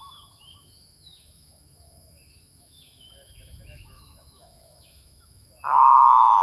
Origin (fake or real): fake